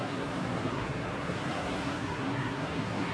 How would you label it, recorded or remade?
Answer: remade